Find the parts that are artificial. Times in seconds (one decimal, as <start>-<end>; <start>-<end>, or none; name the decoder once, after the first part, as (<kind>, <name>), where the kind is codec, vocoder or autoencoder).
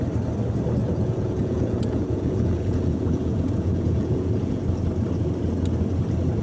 0.8-4.6 (vocoder, Vocos)